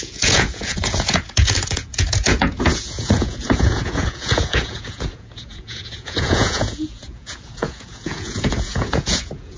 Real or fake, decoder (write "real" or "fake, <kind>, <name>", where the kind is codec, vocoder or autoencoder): fake, vocoder, Vocos